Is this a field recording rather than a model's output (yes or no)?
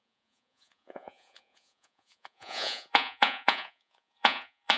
no